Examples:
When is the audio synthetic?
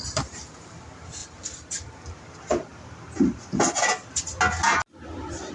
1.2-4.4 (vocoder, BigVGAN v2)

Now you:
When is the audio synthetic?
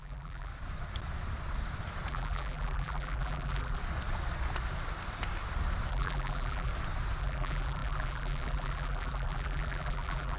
0.0-0.5 (vocoder, BigVGAN v2); 2.1-3.8; 5.9-6.7; 7.2-10.4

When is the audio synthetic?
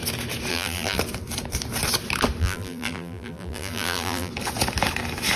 0.5-1.0 (vocoder, BigVGAN v2); 2.4-4.3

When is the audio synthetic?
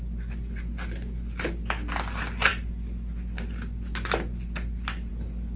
none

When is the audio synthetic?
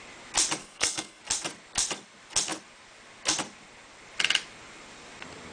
0.6-1.2 (codec, SNAC)